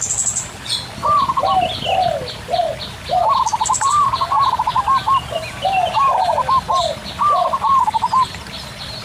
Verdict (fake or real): real